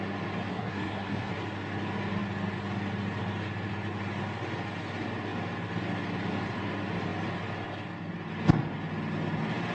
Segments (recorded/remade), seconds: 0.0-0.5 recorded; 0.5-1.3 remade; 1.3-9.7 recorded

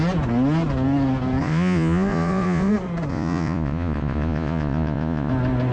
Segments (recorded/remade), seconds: 0.0-1.4 recorded; 1.4-2.7 remade; 2.7-3.1 recorded; 3.1-5.3 remade; 5.3-5.7 recorded

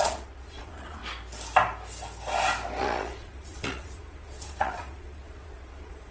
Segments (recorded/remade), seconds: 0.0-1.0 remade; 1.0-2.8 recorded; 2.8-6.1 remade